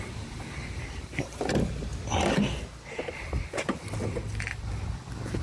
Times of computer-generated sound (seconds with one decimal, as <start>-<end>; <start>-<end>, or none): 0.0-1.9